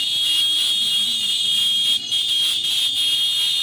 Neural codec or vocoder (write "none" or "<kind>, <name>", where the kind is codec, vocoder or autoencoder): none